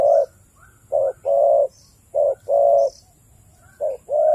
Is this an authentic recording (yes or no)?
yes